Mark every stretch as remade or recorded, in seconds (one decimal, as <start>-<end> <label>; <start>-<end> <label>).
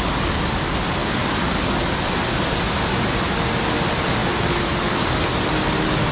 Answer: 0.0-6.1 recorded